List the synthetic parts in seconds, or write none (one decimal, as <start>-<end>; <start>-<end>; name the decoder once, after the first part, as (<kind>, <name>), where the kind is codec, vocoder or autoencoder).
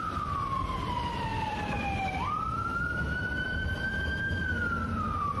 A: 0.0-5.4 (vocoder, BigVGAN v2)